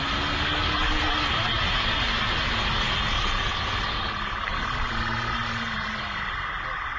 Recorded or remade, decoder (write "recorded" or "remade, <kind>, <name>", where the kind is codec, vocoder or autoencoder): recorded